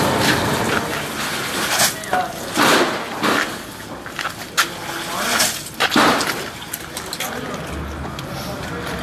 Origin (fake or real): real